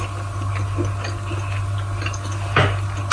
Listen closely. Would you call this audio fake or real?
real